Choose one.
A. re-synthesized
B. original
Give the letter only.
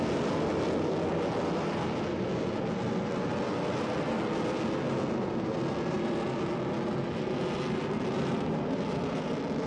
B